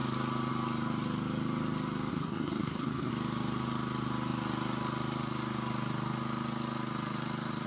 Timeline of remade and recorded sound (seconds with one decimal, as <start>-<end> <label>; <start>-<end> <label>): 0.0-2.1 recorded; 2.1-3.1 remade; 3.1-7.7 recorded